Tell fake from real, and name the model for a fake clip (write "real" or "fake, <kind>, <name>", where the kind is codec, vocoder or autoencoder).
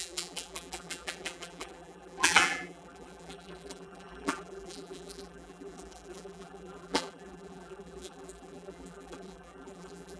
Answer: fake, vocoder, BigVGAN v2